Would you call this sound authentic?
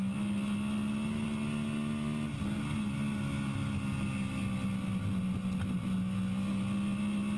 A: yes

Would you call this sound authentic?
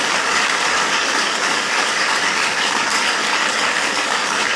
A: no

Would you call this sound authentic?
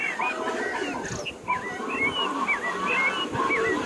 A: yes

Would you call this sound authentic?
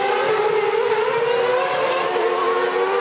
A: yes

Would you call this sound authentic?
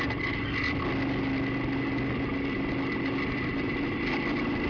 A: yes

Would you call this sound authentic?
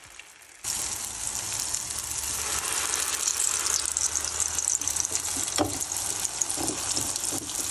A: yes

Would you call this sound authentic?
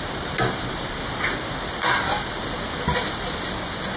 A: yes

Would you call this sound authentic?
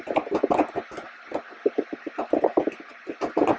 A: yes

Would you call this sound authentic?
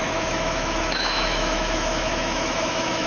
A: no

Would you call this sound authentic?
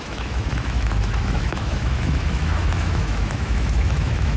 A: no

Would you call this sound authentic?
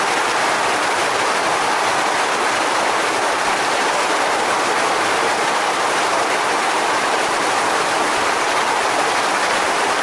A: yes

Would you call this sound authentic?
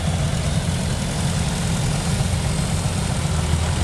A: yes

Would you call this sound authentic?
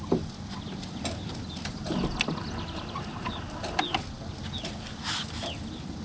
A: yes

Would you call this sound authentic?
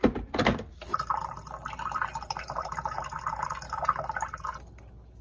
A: yes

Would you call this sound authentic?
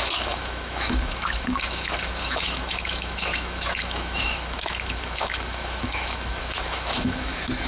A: no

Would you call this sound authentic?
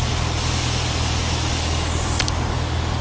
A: yes